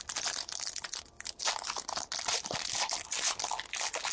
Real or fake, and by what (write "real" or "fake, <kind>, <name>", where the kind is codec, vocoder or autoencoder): real